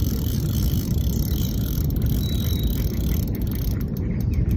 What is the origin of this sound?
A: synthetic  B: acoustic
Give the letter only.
B